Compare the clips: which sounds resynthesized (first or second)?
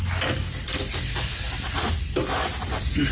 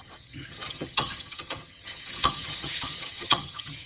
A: second